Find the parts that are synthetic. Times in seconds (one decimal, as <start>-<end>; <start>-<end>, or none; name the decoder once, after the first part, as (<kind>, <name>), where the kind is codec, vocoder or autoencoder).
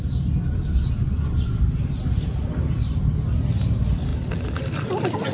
1.0-1.6 (vocoder, Vocos)